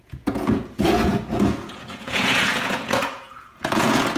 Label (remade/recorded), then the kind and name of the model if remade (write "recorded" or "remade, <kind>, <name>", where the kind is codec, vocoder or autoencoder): remade, vocoder, Vocos